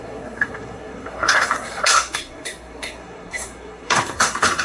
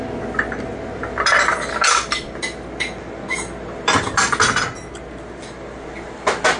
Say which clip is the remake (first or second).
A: first